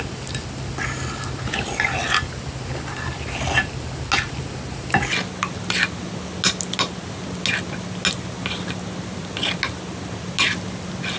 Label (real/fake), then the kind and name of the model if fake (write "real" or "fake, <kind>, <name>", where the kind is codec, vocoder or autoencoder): real